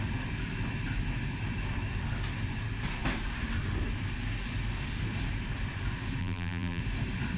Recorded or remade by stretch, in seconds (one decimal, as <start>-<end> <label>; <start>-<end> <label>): 0.0-6.2 recorded; 6.2-6.8 remade; 6.8-7.4 recorded